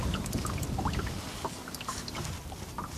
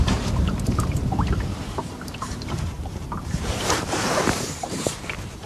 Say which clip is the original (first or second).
first